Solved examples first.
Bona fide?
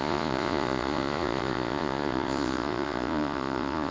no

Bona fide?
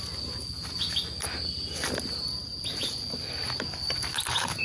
yes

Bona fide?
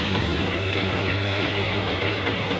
no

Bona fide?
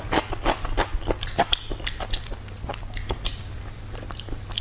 yes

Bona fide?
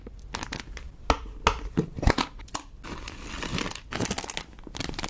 yes